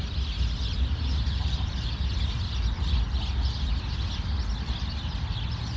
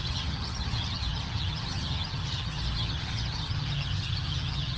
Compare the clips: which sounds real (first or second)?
first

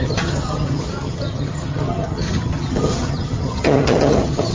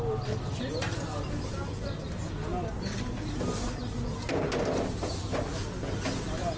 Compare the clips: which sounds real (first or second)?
second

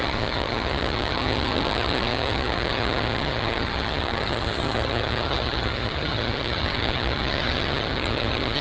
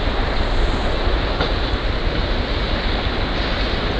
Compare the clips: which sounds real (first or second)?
second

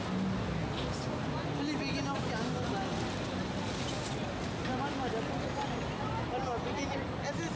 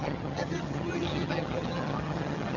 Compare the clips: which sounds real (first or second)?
first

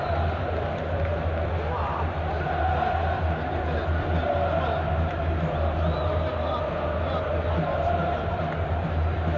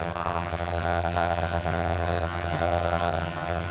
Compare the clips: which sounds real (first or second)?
first